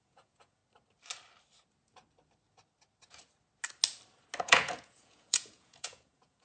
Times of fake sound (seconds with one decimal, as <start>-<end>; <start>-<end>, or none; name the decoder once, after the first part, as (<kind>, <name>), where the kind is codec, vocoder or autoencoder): 0.0-0.6 (vocoder, Vocos); 4.4-6.4